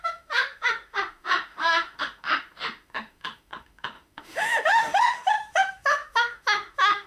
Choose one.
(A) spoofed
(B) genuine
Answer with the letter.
A